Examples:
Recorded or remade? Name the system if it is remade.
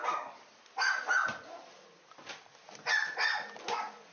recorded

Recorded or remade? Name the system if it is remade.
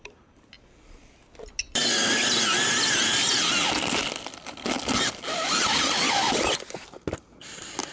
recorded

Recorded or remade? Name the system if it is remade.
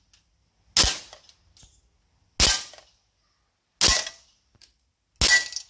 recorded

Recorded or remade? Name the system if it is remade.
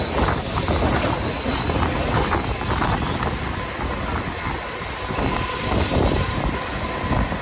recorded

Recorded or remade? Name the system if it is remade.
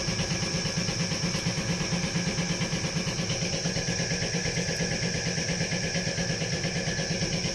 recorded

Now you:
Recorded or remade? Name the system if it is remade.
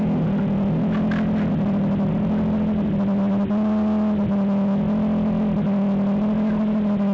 recorded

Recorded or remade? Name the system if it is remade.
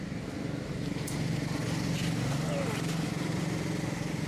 recorded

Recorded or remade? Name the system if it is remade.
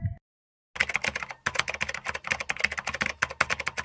recorded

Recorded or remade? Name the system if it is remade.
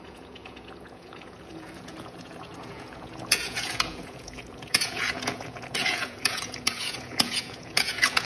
remade, vocoder, Vocos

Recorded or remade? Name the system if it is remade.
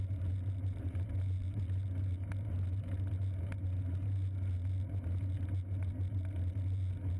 recorded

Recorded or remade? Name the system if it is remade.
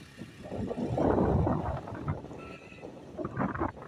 recorded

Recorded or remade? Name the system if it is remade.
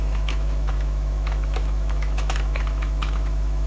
remade, autoencoder, DAC-VAE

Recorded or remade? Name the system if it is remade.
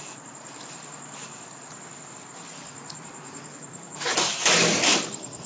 remade, vocoder, BigVGAN v2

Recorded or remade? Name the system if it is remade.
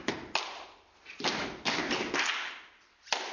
recorded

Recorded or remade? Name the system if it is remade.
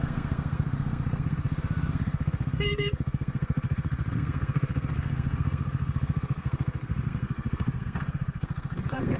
remade, codec, SNAC